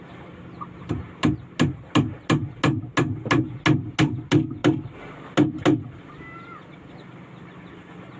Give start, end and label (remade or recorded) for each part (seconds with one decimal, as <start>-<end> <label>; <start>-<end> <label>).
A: 0.0-8.2 recorded